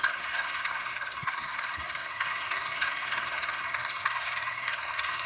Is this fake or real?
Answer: fake